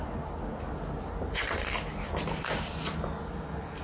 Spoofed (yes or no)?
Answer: no